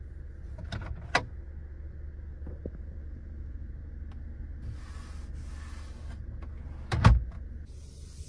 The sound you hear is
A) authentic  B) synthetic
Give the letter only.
A